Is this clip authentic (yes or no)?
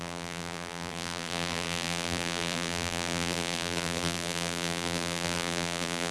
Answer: no